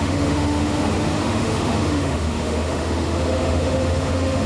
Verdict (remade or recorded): remade